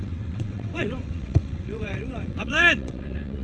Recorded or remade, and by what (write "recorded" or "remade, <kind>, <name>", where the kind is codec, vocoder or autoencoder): remade, vocoder, WaveNeXt